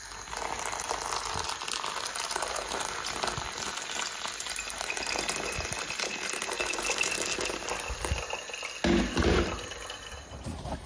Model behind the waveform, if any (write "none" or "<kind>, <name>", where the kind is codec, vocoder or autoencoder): none